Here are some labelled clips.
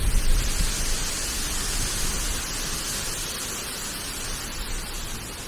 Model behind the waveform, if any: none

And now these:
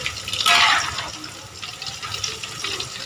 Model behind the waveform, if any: none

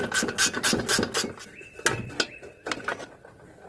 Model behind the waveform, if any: none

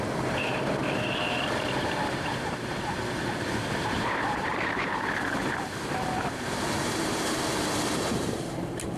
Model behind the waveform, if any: vocoder, BigVGAN v2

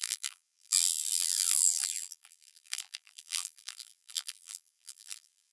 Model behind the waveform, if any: vocoder, BigVGAN v2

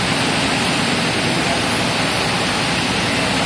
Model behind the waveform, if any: none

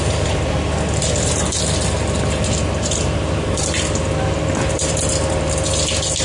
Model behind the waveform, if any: none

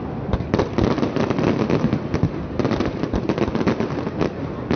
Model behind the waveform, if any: none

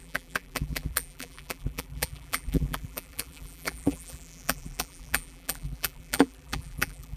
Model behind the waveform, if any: vocoder, BigVGAN v2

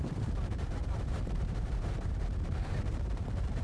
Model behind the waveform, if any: vocoder, BigVGAN v2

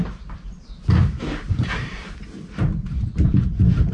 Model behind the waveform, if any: none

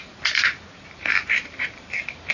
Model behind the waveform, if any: vocoder, BigVGAN v2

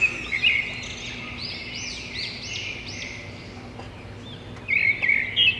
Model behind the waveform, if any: none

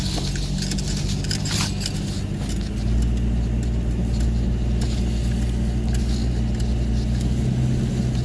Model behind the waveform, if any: none